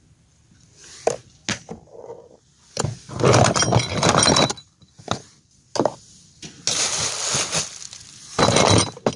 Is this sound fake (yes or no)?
no